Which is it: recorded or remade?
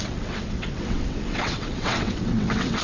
remade